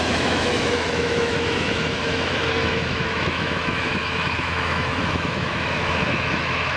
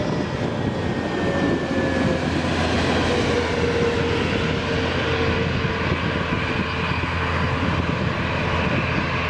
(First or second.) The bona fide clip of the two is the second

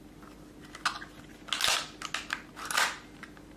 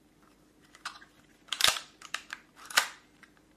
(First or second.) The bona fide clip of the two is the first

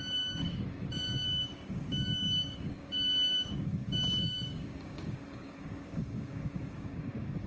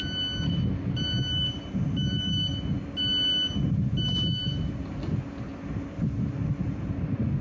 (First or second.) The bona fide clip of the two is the second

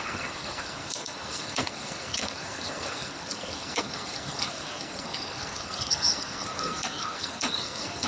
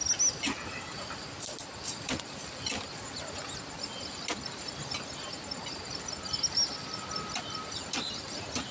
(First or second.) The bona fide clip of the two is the second